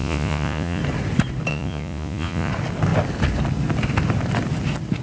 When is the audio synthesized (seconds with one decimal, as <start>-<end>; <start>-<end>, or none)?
0.0-0.8; 1.5-2.5